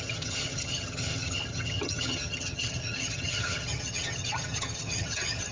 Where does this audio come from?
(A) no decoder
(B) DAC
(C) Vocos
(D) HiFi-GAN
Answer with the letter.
D